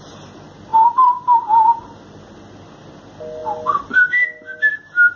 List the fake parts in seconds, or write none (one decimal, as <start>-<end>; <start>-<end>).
0.7-2.2